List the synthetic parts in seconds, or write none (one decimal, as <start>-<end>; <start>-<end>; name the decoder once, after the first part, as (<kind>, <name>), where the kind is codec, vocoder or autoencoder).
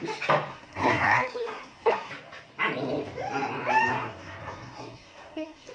0.5-2.1 (codec, SNAC); 3.9-5.7